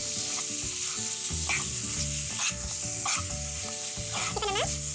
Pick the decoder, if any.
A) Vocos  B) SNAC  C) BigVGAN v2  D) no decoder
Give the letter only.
D